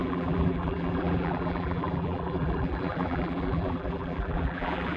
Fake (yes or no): yes